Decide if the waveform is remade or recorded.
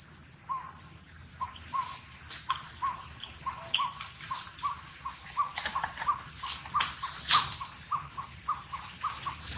recorded